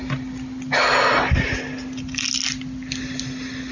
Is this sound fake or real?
real